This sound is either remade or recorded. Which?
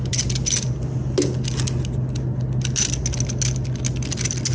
recorded